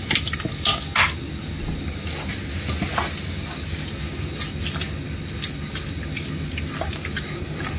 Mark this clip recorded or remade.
recorded